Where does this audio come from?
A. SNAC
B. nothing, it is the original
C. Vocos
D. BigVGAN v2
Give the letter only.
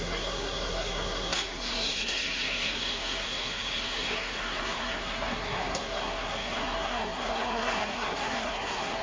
A